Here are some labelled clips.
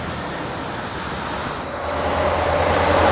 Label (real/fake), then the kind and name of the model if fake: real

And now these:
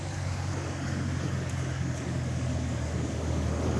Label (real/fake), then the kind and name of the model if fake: fake, codec, DAC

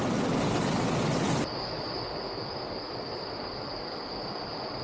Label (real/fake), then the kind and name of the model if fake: real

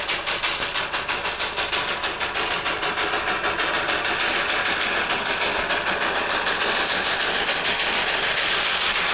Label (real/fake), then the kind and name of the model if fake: real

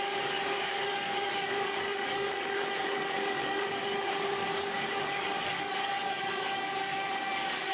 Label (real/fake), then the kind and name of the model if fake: fake, codec, DAC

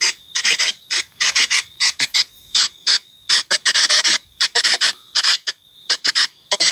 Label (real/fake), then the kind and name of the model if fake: fake, codec, DAC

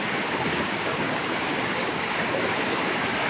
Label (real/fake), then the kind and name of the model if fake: fake, codec, DAC